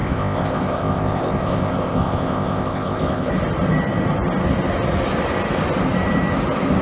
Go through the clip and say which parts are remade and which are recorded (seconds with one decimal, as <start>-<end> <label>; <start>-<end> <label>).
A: 0.0-3.3 remade; 3.3-6.8 recorded